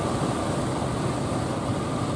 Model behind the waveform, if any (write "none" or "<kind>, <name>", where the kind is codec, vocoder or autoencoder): none